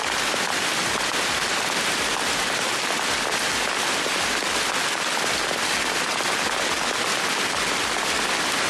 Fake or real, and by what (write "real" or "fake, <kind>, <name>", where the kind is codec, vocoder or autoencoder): real